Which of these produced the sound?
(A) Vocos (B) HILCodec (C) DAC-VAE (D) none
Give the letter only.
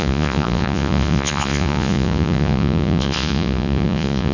A